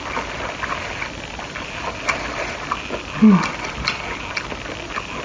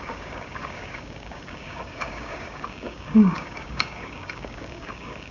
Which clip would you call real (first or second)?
first